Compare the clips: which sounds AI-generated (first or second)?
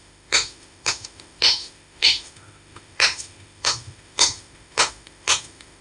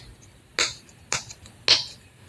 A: first